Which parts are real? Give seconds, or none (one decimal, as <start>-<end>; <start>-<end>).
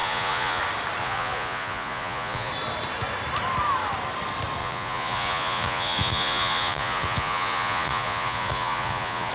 0.6-1.0; 2.5-4.6